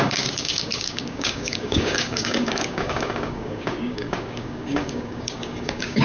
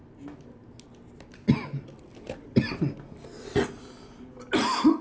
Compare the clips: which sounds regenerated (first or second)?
first